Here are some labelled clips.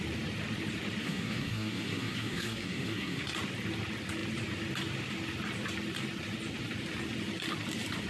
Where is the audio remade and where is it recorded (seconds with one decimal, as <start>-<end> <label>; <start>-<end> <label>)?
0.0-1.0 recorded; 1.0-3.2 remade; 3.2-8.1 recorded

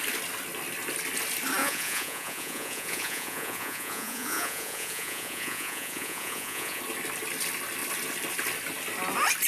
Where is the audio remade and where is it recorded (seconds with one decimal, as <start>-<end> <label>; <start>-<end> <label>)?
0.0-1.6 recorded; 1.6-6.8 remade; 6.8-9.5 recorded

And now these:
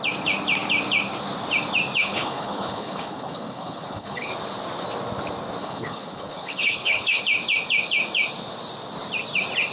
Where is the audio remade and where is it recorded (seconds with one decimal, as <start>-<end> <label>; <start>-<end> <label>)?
0.0-2.0 recorded; 2.0-4.3 remade; 4.3-5.6 recorded; 5.6-7.2 remade; 7.2-9.7 recorded